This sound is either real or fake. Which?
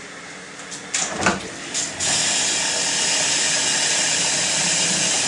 real